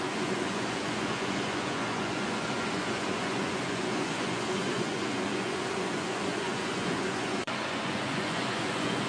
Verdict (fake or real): fake